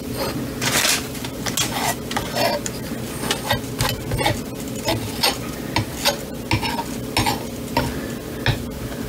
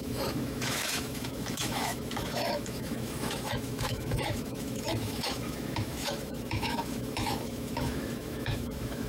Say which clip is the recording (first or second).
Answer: first